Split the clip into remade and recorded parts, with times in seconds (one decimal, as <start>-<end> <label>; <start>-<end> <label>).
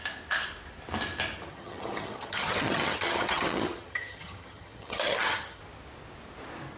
0.0-1.5 recorded; 1.5-5.6 remade; 5.6-6.8 recorded